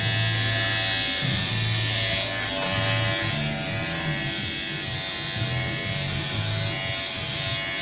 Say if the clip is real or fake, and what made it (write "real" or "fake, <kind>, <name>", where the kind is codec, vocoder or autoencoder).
real